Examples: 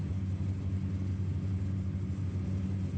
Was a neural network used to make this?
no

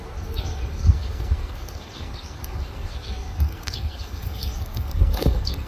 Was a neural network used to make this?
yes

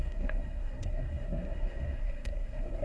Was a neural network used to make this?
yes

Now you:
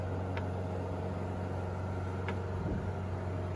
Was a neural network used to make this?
no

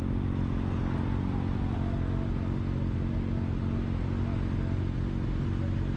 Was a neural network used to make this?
no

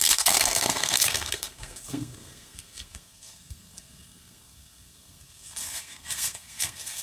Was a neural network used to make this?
yes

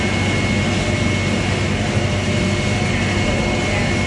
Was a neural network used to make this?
no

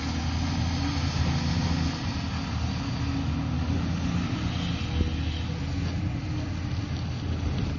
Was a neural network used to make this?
no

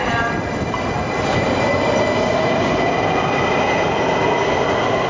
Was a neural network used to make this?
no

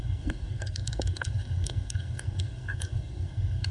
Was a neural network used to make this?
yes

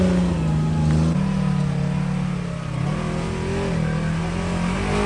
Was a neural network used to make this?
no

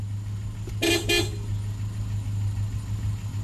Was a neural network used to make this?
no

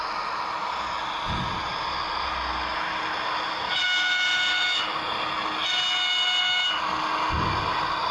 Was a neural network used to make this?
no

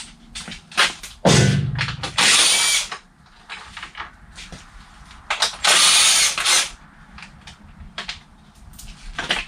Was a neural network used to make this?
no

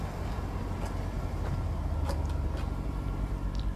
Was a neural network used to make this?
no